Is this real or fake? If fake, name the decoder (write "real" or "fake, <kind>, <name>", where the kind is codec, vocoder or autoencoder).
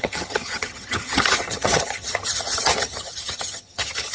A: fake, vocoder, HiFi-GAN